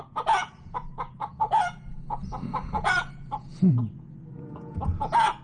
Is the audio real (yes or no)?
no